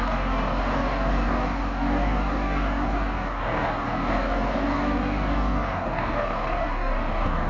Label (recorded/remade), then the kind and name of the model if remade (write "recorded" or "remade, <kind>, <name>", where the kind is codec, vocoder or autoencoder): remade, codec, DAC